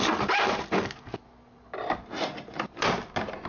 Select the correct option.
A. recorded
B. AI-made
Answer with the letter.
A